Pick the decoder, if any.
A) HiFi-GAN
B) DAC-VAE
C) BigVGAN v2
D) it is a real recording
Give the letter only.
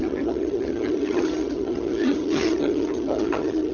A